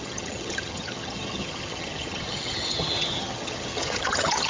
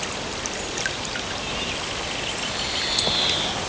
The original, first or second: second